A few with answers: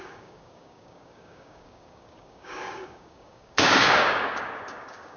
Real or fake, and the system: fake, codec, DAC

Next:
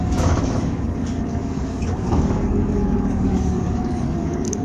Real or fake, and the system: fake, codec, DAC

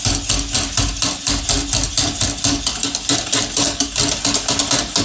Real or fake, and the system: real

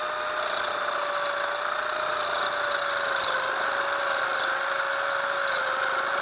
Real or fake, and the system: real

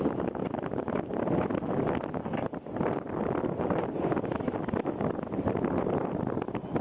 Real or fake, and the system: real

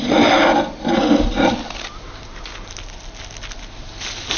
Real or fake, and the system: real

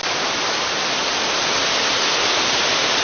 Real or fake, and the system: real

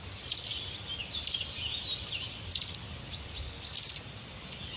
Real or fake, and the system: real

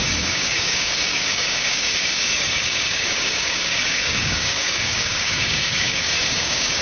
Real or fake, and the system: fake, codec, DAC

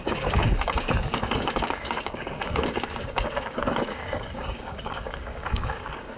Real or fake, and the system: fake, codec, DAC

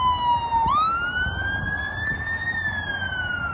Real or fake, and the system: real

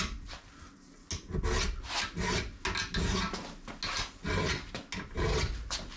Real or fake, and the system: real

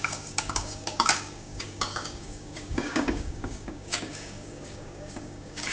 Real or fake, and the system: fake, codec, DAC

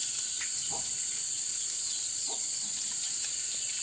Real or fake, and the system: real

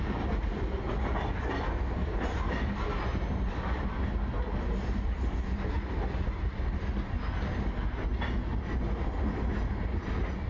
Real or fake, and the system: real